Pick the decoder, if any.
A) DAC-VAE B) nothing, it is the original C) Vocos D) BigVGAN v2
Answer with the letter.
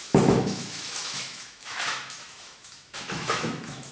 A